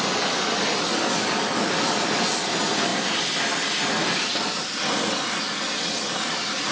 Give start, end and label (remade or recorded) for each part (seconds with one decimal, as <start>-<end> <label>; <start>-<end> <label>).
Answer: 0.0-6.7 recorded